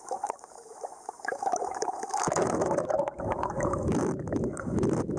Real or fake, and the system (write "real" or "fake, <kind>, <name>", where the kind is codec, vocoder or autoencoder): fake, autoencoder, DAC-VAE